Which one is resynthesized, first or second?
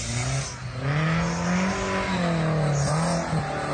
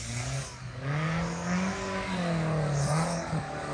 second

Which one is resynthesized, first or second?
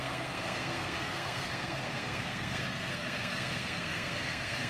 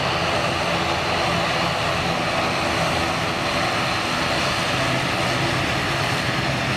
first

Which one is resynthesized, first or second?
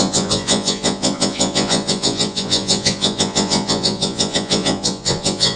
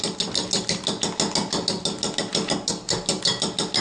first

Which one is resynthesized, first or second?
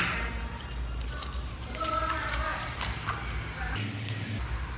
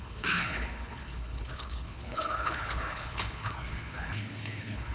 second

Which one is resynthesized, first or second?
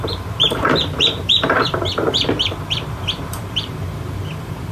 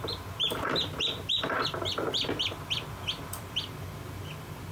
first